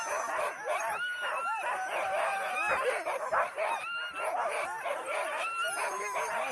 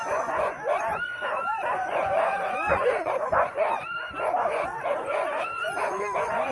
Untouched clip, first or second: first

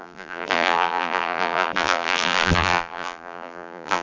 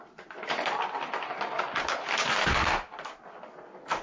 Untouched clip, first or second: second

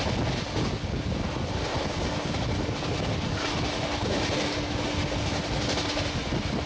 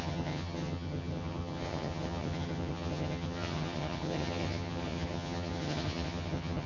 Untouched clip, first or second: first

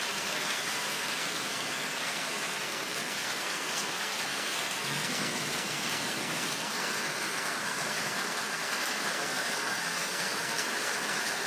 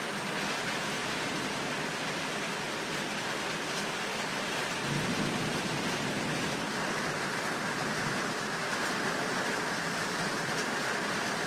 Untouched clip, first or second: second